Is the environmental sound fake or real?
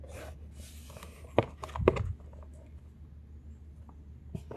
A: real